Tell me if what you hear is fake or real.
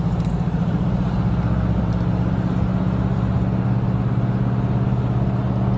real